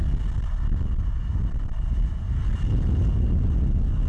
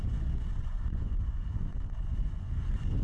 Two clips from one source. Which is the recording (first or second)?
first